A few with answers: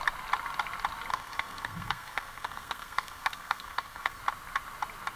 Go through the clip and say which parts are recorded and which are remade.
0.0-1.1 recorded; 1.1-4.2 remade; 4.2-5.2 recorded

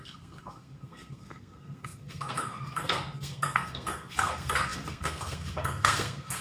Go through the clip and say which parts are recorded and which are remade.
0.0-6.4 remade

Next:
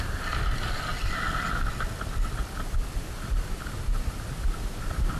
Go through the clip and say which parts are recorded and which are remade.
0.0-5.2 recorded

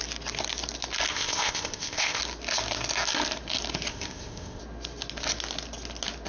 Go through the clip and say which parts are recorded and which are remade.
0.0-1.1 recorded; 1.1-2.2 remade; 2.2-3.9 recorded; 3.9-4.6 remade; 4.6-6.3 recorded

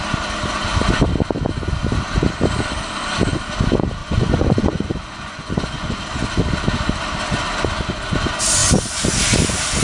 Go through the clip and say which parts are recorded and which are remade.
0.0-4.0 recorded; 4.0-6.0 remade; 6.0-9.8 recorded